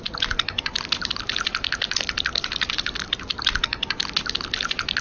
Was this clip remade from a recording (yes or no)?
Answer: no